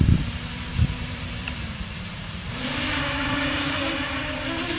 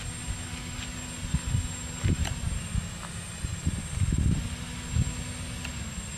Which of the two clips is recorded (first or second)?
second